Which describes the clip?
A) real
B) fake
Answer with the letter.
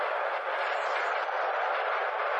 A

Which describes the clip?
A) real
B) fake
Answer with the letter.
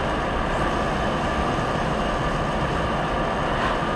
A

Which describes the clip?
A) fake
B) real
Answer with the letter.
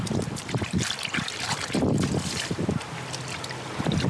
B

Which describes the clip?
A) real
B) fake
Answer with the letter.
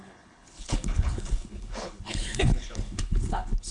B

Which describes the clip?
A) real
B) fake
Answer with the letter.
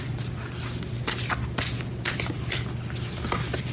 A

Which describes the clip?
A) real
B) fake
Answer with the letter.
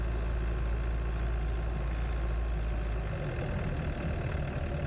A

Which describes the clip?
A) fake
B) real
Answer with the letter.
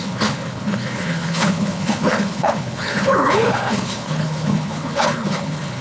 A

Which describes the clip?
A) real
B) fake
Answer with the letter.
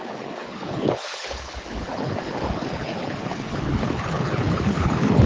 B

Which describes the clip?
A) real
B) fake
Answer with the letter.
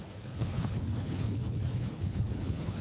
B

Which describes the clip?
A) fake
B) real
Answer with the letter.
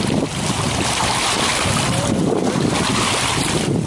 B